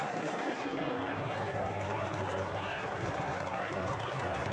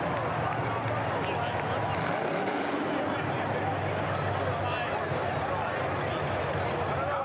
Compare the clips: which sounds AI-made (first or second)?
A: first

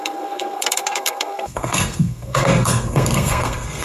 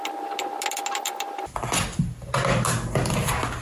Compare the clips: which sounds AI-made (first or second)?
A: first